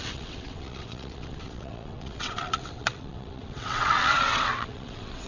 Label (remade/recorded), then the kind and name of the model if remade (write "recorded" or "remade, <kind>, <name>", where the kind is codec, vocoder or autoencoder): remade, vocoder, WaveNeXt